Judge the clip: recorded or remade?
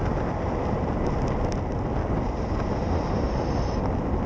recorded